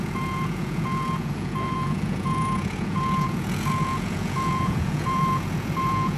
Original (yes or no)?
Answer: no